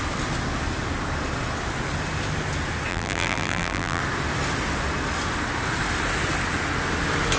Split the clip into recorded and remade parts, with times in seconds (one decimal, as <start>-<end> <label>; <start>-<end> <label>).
0.0-2.9 recorded; 2.9-4.0 remade; 4.0-7.4 recorded